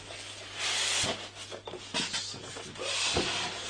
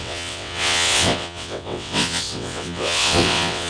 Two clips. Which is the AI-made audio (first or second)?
second